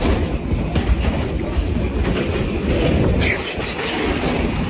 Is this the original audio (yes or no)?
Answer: yes